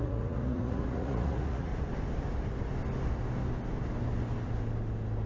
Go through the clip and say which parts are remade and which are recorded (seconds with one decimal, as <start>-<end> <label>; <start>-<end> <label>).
0.0-1.7 remade; 1.7-5.3 recorded